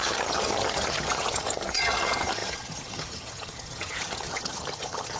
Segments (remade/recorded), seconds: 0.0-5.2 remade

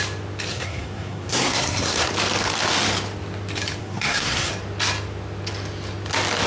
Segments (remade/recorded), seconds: 0.0-0.5 recorded; 0.5-2.1 remade; 2.1-3.8 recorded; 3.8-4.5 remade; 4.5-6.5 recorded

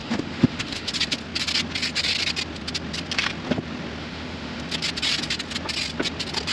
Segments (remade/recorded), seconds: 0.0-0.9 remade; 0.9-4.0 recorded; 4.0-4.6 remade; 4.6-6.5 recorded

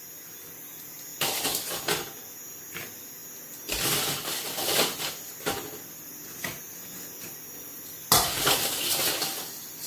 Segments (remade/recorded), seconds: 0.0-1.1 recorded; 1.1-1.7 remade; 1.7-7.7 recorded; 7.7-9.9 remade